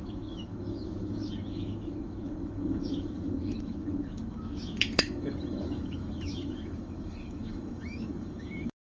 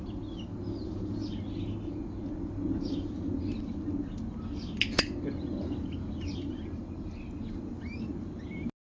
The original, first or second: second